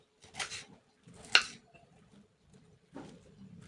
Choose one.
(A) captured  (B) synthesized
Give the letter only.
A